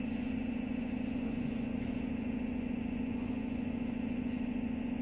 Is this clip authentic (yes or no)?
no